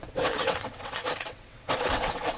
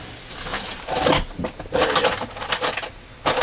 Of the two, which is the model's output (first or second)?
first